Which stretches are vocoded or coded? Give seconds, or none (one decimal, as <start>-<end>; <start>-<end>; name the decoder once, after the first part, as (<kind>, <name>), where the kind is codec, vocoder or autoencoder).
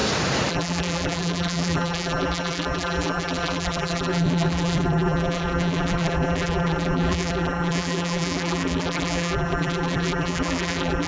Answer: 0.5-11.1 (vocoder, BigVGAN v2)